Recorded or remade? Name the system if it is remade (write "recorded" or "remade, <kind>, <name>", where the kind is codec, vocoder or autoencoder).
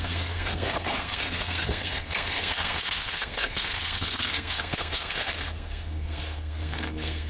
remade, codec, SNAC